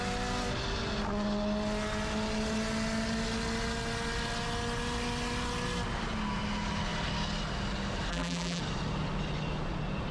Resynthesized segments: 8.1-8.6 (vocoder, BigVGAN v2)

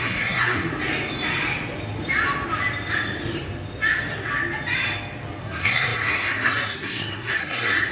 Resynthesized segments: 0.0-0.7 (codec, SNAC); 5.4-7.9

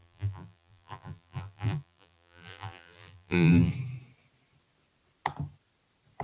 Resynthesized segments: 0.0-3.7 (vocoder, BigVGAN v2)

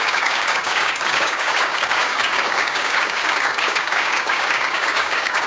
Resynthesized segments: 0.0-5.5 (codec, DAC)

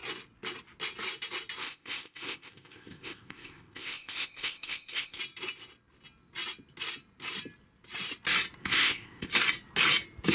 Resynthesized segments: 1.6-5.2 (codec, ZipCodec); 8.6-9.3

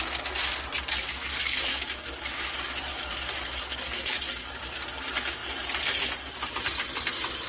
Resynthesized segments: 1.3-4.6 (codec, DAC)